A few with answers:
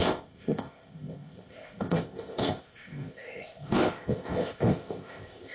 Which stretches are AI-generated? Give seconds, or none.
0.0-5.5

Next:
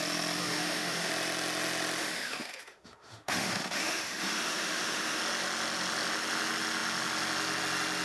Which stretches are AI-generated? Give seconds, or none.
0.4-1.1; 2.0-5.2

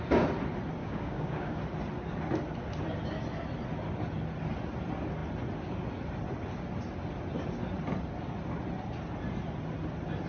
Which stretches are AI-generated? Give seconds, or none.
0.8-1.6